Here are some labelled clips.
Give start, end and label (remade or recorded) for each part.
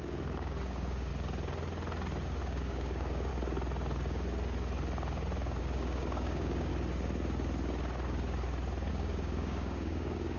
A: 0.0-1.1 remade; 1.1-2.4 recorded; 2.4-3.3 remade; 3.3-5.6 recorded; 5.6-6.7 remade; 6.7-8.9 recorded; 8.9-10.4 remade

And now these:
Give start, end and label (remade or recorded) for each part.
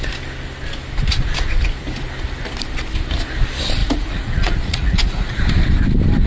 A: 0.0-3.8 recorded; 3.8-5.4 remade; 5.4-6.3 recorded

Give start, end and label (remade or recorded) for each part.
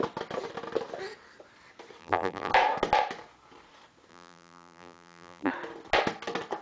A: 0.0-2.0 recorded; 2.0-2.5 remade; 2.5-4.1 recorded; 4.1-5.5 remade; 5.5-6.6 recorded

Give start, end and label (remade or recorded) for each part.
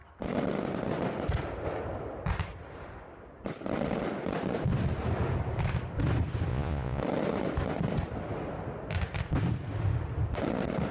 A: 0.0-6.5 recorded; 6.5-7.0 remade; 7.0-10.9 recorded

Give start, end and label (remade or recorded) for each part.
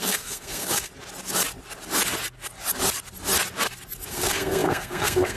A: 0.0-0.9 remade; 0.9-4.1 recorded; 4.1-5.4 remade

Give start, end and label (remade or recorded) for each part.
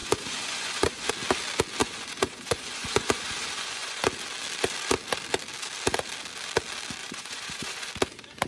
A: 0.0-1.1 remade; 1.1-1.8 recorded; 1.8-4.0 remade; 4.0-7.0 recorded; 7.0-7.9 remade; 7.9-8.5 recorded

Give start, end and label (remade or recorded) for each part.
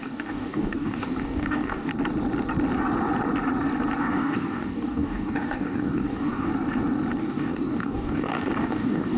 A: 0.0-1.9 remade; 1.9-4.0 recorded; 4.0-6.5 remade; 6.5-7.2 recorded; 7.2-9.2 remade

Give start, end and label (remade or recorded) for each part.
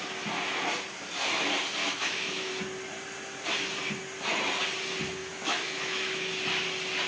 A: 0.0-1.8 recorded; 1.8-2.5 remade; 2.5-5.2 recorded; 5.2-6.3 remade; 6.3-7.1 recorded